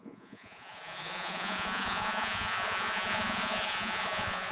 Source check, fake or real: fake